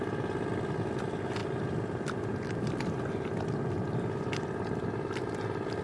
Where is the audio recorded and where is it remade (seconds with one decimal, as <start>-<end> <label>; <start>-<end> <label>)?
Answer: 0.0-5.8 recorded